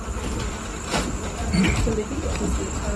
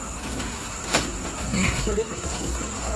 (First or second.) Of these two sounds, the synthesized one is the second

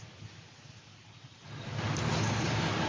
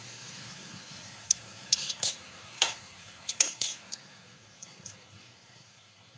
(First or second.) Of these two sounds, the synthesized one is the second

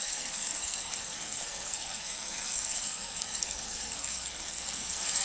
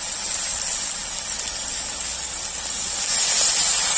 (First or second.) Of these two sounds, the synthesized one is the first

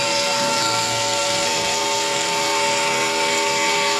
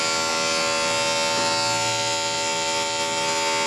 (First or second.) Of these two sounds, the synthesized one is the first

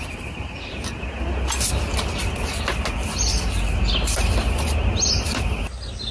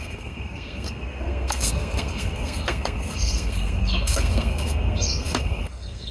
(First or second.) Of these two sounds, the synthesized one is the second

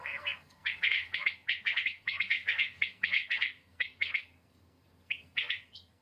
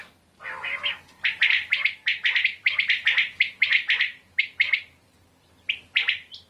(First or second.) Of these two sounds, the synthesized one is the first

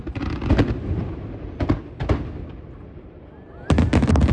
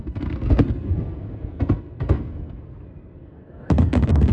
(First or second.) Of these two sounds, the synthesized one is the second